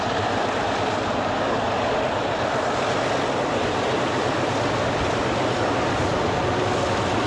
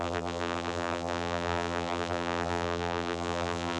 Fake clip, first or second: second